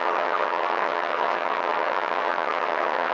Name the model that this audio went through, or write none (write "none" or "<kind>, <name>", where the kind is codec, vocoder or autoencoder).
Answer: vocoder, HiFi-GAN